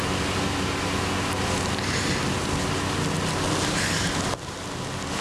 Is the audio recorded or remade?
recorded